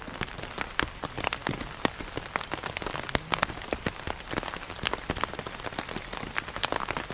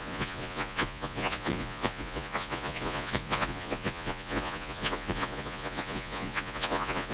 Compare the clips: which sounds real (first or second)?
first